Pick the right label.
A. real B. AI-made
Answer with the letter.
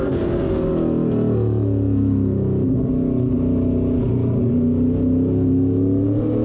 A